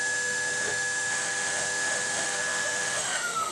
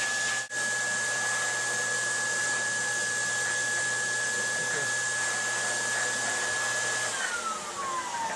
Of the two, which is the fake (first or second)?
first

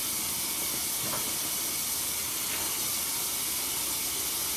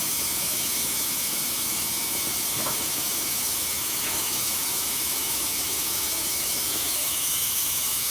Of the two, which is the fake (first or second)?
second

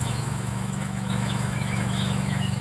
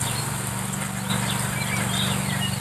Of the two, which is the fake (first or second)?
first